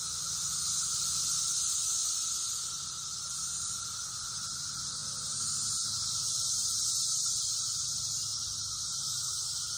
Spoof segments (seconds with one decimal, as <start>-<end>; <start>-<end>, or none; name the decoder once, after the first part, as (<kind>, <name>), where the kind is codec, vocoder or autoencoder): 0.0-5.0 (vocoder, BigVGAN v2); 8.8-9.8